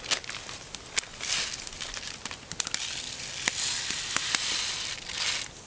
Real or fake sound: real